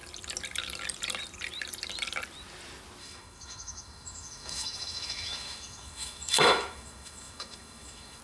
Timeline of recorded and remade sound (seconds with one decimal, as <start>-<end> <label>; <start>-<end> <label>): 0.0-3.0 recorded; 3.0-8.2 remade